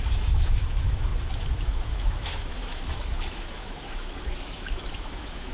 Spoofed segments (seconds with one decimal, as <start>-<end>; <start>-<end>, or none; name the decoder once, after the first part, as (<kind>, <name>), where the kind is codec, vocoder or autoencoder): 0.0-5.5 (autoencoder, DAC-VAE)